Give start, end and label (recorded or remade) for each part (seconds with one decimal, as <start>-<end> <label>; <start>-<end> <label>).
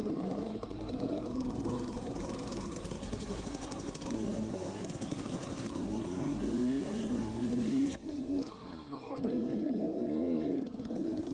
0.0-11.3 remade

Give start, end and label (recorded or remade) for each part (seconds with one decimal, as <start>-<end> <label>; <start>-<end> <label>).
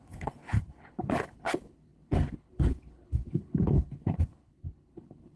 0.0-5.4 remade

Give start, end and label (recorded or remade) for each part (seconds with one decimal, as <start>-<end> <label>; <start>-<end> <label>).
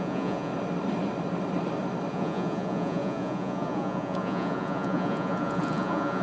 0.0-0.5 remade; 0.5-2.1 recorded; 2.1-6.2 remade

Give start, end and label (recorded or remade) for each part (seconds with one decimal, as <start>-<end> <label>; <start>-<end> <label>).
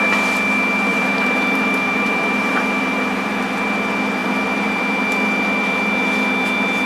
0.0-0.9 recorded; 0.9-3.2 remade; 3.2-4.2 recorded; 4.2-4.7 remade; 4.7-6.9 recorded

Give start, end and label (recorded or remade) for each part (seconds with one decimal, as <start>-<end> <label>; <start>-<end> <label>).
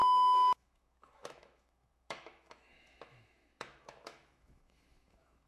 0.0-5.5 remade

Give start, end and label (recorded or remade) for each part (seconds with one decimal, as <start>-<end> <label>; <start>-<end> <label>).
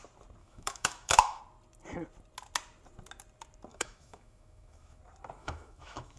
0.0-0.4 recorded; 0.4-1.4 remade; 1.4-3.7 recorded; 3.7-5.0 remade; 5.0-5.4 recorded; 5.4-6.2 remade